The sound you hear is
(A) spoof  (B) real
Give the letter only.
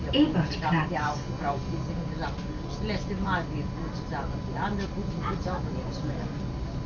B